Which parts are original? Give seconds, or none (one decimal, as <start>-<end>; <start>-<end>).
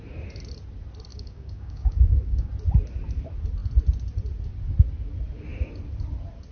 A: 0.0-1.1; 2.5-6.5